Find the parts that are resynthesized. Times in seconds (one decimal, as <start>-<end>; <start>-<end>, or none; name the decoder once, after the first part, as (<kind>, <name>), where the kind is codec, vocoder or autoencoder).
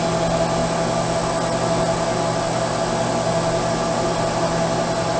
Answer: none